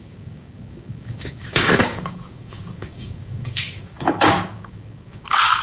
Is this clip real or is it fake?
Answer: fake